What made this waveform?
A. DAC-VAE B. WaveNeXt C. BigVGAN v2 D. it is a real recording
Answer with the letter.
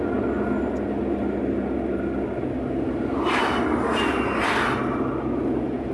D